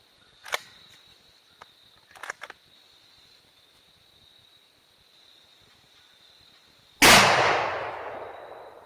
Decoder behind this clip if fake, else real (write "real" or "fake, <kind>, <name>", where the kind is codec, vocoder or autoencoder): real